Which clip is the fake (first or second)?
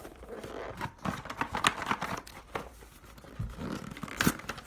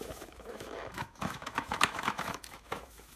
second